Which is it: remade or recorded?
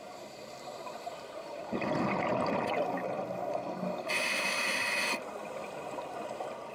recorded